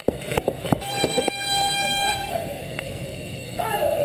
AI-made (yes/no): yes